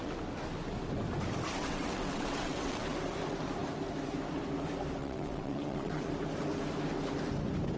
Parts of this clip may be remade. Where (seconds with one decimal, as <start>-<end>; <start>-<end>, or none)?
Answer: 1.6-2.9; 5.0-6.1